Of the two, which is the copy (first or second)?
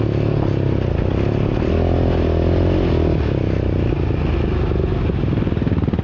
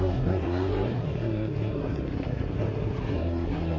second